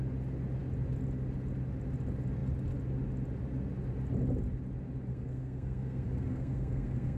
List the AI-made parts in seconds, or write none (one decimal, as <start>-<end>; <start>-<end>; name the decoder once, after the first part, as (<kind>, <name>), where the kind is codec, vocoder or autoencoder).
5.1-7.2 (codec, SNAC)